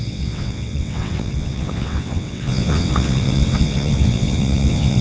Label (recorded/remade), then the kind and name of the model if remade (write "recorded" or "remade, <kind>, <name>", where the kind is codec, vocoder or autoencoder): remade, vocoder, WaveNeXt